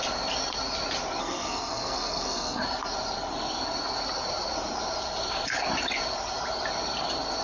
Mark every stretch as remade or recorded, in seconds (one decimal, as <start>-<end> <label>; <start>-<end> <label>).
0.0-1.2 recorded; 1.2-2.6 remade; 2.6-7.4 recorded